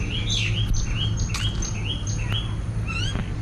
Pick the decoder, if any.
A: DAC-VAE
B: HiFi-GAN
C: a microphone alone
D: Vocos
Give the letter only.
C